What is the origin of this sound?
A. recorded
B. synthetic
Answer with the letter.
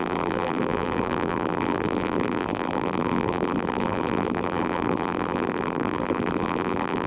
B